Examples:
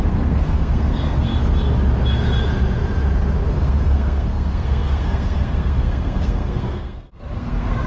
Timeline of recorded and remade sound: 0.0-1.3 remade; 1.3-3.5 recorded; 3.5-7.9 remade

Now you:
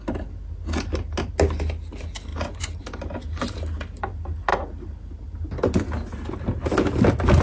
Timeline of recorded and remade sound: 0.0-7.4 recorded

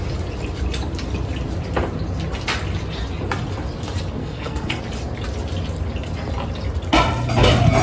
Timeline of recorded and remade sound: 0.0-4.2 recorded; 4.2-4.8 remade; 4.8-7.8 recorded

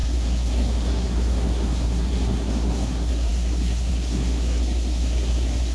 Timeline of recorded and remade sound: 0.0-5.7 remade